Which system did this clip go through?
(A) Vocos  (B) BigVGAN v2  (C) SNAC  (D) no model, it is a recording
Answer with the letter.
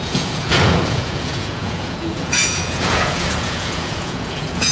A